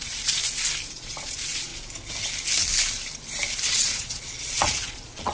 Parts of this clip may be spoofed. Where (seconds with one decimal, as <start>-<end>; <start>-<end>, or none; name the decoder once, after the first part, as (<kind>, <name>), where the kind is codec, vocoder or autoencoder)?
0.0-0.4 (vocoder, Vocos); 0.9-1.7; 3.6-5.3